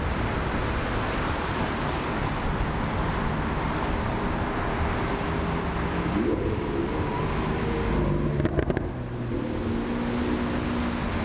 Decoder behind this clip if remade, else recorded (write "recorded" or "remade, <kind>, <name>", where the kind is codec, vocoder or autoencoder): recorded